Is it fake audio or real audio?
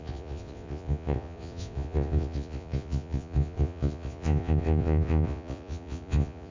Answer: fake